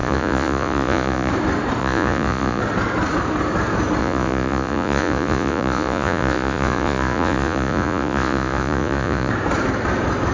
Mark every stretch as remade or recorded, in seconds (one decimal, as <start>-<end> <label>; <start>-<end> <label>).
0.0-1.3 remade; 1.3-1.8 recorded; 1.8-2.6 remade; 2.6-4.0 recorded; 4.0-9.3 remade; 9.3-10.3 recorded